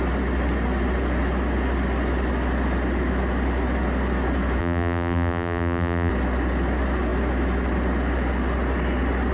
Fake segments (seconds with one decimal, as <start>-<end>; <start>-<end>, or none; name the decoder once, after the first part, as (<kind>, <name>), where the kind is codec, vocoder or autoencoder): 4.6-6.1 (vocoder, BigVGAN v2)